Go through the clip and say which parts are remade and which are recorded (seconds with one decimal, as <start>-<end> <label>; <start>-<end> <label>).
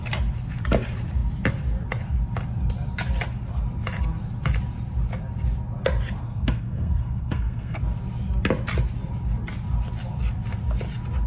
0.0-6.2 recorded; 6.2-7.8 remade; 7.8-11.3 recorded